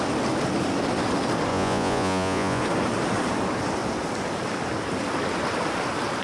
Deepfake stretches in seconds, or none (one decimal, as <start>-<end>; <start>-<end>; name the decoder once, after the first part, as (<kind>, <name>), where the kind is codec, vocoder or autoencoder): 1.5-2.6 (vocoder, Vocos)